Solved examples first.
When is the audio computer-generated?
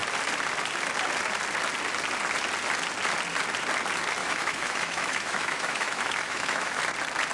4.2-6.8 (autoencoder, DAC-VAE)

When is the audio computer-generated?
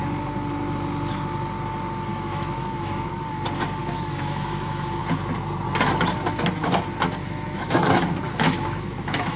2.1-3.1 (autoencoder, DAC-VAE); 3.8-5.0; 7.2-9.4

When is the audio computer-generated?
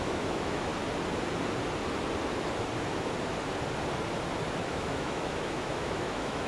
0.0-0.7 (autoencoder, DAC-VAE); 4.6-6.5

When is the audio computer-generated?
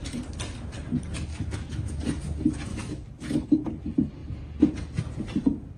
1.3-2.0 (autoencoder, DAC-VAE); 2.7-3.7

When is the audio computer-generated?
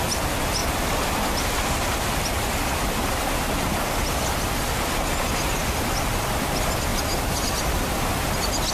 none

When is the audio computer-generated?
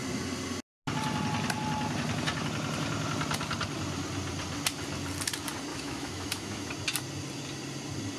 5.7-6.7 (autoencoder, DAC-VAE)